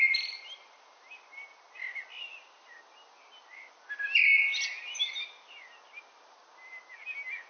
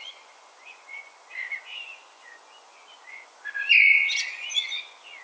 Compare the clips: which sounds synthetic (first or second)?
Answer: second